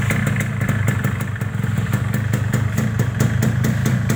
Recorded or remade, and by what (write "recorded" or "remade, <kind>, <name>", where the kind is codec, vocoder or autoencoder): recorded